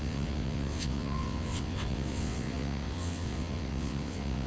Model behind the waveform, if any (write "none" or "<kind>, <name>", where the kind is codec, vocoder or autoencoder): vocoder, WaveNeXt